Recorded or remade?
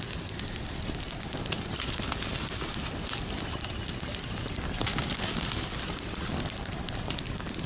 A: recorded